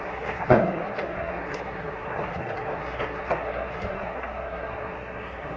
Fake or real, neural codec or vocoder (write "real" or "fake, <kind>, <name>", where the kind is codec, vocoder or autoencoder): fake, codec, SNAC